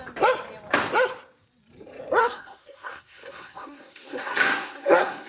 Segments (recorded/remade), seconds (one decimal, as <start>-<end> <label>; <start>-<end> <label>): 0.0-2.2 recorded; 2.2-5.3 remade